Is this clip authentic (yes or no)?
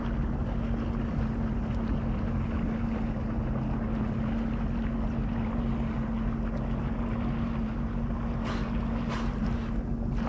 yes